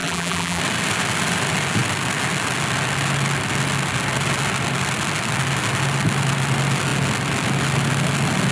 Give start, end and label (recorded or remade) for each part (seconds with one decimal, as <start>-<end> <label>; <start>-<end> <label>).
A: 0.0-0.6 remade; 0.6-8.5 recorded